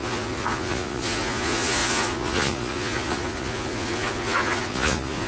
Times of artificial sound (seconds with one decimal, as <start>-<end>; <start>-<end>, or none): 0.0-5.3